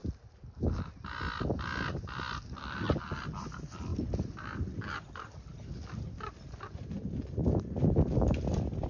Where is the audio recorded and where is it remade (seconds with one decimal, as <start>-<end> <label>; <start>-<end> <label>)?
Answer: 0.0-8.9 recorded